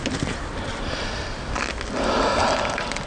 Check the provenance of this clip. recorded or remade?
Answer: recorded